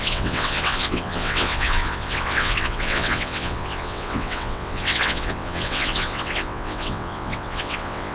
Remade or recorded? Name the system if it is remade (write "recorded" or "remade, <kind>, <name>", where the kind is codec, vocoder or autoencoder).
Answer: remade, vocoder, WaveNeXt